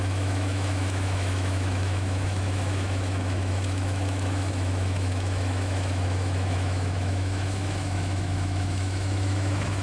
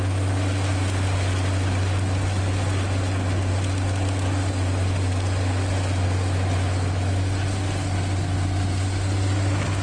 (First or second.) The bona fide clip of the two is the second